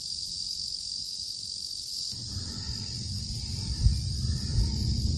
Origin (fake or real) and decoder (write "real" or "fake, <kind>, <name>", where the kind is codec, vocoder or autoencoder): real